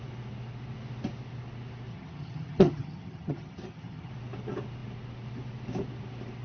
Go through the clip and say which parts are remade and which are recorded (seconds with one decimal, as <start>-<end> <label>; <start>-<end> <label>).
0.0-1.9 recorded; 1.9-4.1 remade; 4.1-6.4 recorded